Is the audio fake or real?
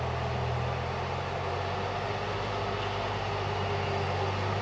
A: real